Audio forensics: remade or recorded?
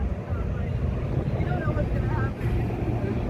recorded